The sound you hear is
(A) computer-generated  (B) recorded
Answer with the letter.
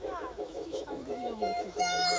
A